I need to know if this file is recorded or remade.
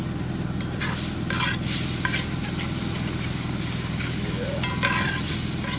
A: recorded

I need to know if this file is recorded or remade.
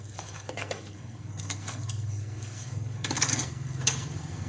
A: remade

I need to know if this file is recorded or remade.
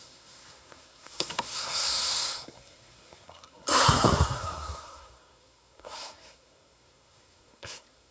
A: remade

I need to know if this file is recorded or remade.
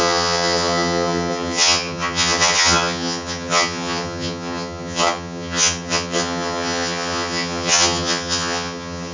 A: remade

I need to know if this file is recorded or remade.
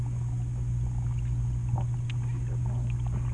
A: recorded